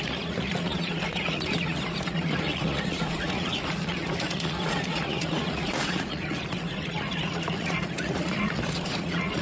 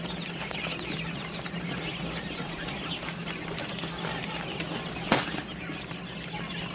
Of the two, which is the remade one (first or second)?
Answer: first